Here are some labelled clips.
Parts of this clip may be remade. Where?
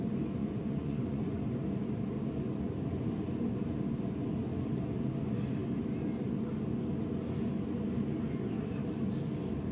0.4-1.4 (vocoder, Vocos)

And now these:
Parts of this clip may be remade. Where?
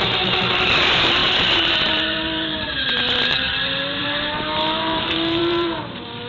0.0-6.3 (vocoder, BigVGAN v2)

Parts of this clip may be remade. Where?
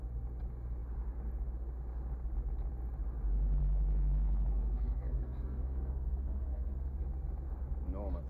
3.6-7.0 (codec, SNAC)